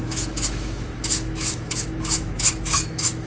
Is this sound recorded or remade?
remade